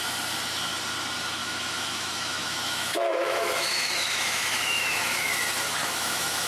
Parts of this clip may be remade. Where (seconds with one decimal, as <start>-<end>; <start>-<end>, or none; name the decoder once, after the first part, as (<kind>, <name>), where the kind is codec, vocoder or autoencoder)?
1.4-5.3 (autoencoder, DAC-VAE); 5.8-6.5